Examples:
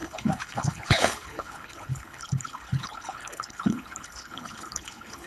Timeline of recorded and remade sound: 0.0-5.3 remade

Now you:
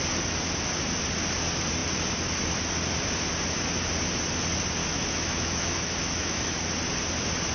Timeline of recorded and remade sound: 0.0-4.8 recorded; 4.8-6.5 remade; 6.5-7.5 recorded

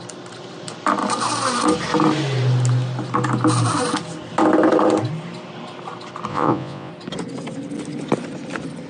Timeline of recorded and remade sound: 0.0-6.3 recorded; 6.3-6.9 remade; 6.9-8.9 recorded

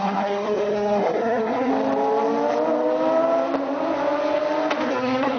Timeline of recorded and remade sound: 0.0-1.7 remade; 1.7-4.9 recorded; 4.9-5.4 remade

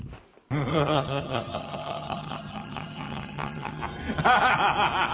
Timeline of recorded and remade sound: 0.0-0.7 recorded; 0.7-3.8 remade; 3.8-5.1 recorded

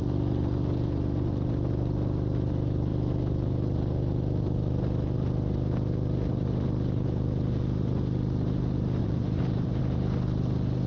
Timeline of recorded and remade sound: 0.0-9.0 recorded; 9.0-9.8 remade; 9.8-10.9 recorded